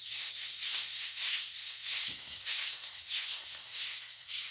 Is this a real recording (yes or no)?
no